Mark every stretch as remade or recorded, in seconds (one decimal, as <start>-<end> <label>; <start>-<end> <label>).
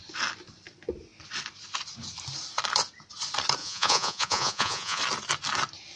0.0-3.6 recorded; 3.6-5.0 remade; 5.0-6.0 recorded